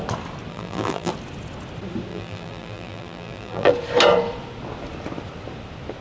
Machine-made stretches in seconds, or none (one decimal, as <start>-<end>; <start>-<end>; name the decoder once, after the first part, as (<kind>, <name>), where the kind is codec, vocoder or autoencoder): 0.5-1.1 (vocoder, BigVGAN v2); 2.1-3.7